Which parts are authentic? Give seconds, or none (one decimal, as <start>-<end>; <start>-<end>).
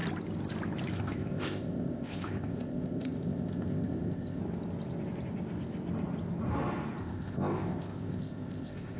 0.0-0.9; 4.4-7.0